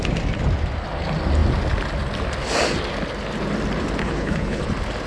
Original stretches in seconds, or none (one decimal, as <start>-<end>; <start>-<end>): 0.0-4.0; 4.6-5.1